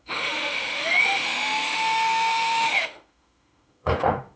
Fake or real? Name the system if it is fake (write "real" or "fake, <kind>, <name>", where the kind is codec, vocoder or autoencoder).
fake, autoencoder, DAC-VAE